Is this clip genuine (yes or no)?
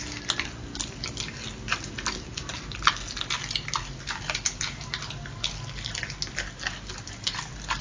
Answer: yes